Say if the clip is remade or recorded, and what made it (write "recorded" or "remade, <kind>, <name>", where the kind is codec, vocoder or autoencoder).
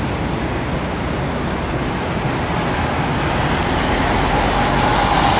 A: recorded